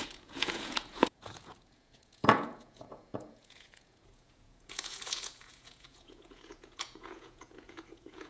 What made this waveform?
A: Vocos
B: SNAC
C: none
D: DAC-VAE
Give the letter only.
A